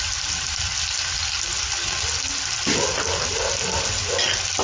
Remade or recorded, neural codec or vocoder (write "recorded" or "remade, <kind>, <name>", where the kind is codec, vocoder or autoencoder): recorded